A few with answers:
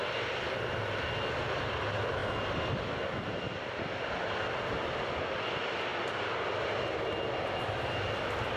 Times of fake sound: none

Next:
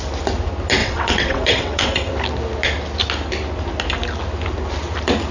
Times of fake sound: 0.8-2.1 (vocoder, WaveNeXt)

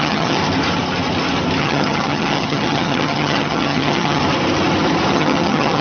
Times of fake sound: 0.0-0.4 (vocoder, HiFi-GAN); 1.6-4.2; 5.1-5.8

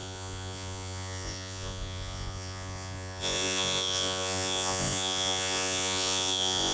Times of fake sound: 0.0-6.7 (vocoder, Vocos)

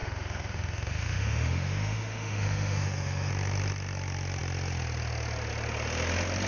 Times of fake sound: 0.0-3.3 (autoencoder, DAC-VAE)

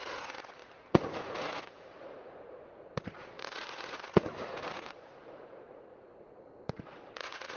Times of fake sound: 0.0-7.6 (vocoder, Vocos)

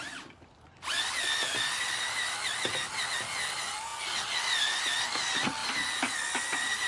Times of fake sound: none